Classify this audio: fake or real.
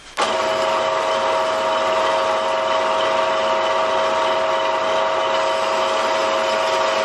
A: real